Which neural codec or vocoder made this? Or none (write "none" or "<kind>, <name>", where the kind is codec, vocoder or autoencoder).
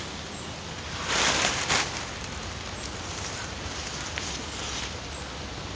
none